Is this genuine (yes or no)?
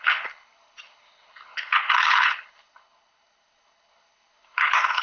no